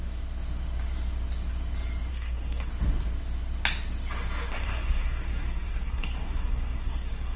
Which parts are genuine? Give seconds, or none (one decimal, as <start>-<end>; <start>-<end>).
0.0-2.1; 2.7-4.5

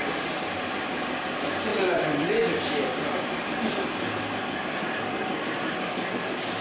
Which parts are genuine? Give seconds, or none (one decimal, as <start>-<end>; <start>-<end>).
0.0-6.6

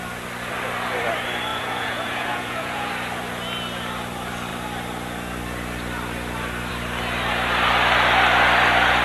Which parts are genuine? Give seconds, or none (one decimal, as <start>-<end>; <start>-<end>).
0.0-1.5; 2.9-9.0

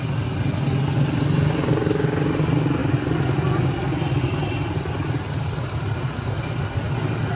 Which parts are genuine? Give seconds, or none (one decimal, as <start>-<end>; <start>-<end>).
0.0-7.4

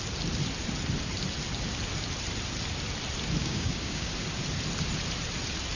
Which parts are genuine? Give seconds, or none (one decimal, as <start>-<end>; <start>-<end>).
0.0-3.4; 4.1-5.8

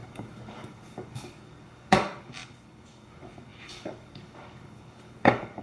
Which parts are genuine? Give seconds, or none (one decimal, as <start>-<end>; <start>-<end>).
none

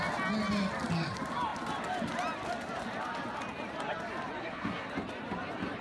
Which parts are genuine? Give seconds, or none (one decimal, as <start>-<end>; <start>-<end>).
0.0-4.4; 4.9-5.8

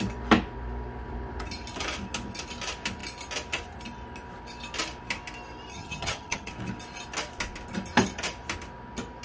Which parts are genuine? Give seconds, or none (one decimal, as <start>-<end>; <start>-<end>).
0.0-5.7; 6.5-9.2